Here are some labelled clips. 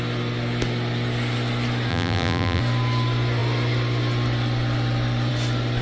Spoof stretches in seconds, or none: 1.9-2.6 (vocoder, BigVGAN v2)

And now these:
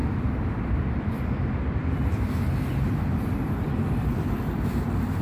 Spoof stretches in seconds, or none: 0.0-5.2 (vocoder, BigVGAN v2)

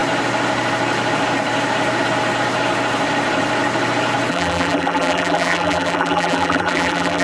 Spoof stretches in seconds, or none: 4.3-7.2 (vocoder, BigVGAN v2)

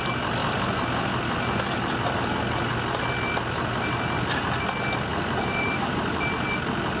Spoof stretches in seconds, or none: 5.1-5.9 (vocoder, BigVGAN v2)

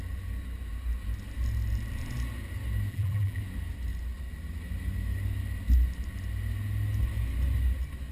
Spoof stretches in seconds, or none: 2.9-3.4 (vocoder, BigVGAN v2)

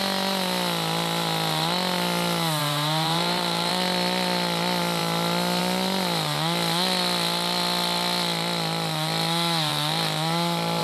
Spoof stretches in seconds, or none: 2.6-3.7 (vocoder, BigVGAN v2)

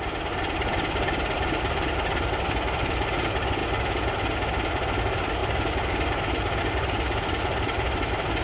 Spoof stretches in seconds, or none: 0.0-5.4 (vocoder, BigVGAN v2); 6.6-8.4

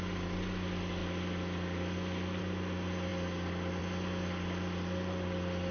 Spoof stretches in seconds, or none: none